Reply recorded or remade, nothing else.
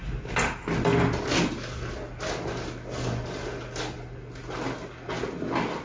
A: recorded